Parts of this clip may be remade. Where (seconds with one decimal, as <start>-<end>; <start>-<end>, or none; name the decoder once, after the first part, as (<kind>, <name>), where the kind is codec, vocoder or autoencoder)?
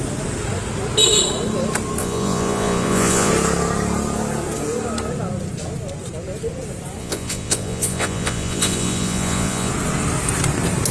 2.0-3.3 (vocoder, Vocos); 7.0-9.7